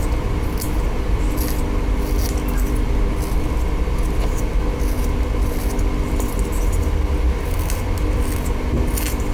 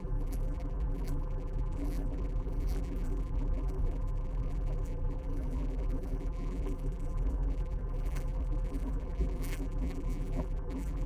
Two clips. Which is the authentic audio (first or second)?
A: first